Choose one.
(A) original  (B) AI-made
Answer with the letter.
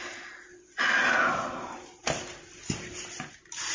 A